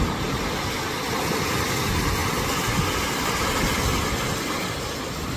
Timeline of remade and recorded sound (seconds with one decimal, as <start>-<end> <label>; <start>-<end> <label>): 0.0-5.4 recorded